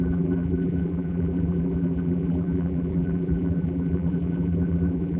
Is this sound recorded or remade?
remade